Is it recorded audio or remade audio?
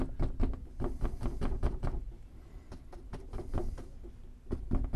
recorded